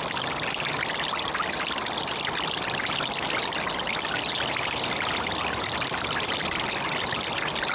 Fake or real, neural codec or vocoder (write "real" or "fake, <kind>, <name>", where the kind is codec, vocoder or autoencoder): real